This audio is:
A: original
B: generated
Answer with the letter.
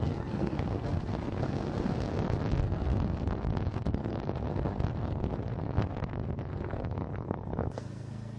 B